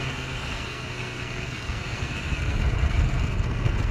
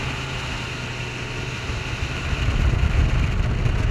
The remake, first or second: first